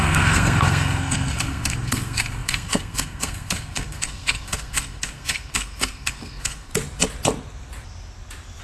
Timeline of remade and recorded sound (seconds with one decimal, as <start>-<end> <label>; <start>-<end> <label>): 0.0-6.7 remade; 6.7-8.6 recorded